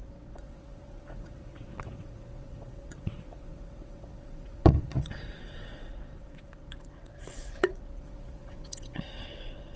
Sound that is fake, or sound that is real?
fake